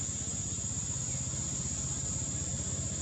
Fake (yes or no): no